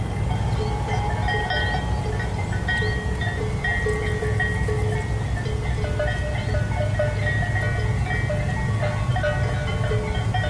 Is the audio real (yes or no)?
yes